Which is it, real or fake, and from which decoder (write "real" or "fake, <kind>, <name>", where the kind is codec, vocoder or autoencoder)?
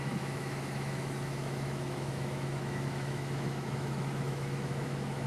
fake, autoencoder, DAC-VAE